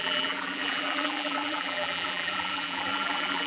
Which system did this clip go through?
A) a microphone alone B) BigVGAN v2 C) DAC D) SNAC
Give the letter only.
B